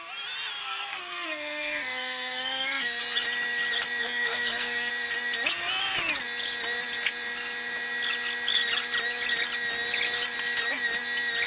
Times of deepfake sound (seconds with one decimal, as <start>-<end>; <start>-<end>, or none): 0.6-3.0; 4.0-4.9